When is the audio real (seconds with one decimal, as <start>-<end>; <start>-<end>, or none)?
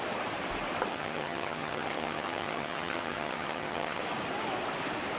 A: 0.0-0.9; 4.0-5.2